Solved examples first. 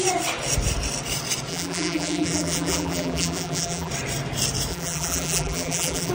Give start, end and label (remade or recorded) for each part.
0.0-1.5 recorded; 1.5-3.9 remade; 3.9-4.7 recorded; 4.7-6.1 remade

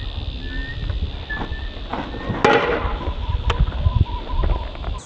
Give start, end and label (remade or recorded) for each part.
0.0-5.1 recorded

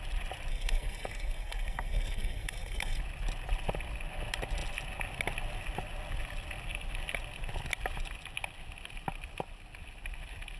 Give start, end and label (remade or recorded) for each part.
0.0-0.5 recorded; 0.5-3.0 remade; 3.0-10.6 recorded